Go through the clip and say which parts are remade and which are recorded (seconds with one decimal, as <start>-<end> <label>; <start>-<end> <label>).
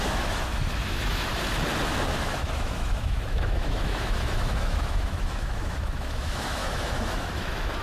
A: 0.0-1.3 remade; 1.3-2.2 recorded; 2.2-7.8 remade